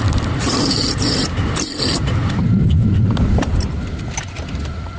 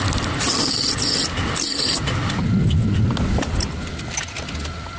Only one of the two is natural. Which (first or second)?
second